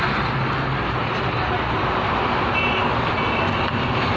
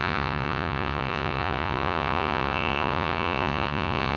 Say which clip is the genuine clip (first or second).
first